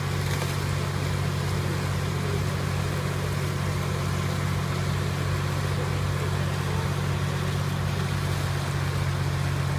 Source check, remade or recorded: recorded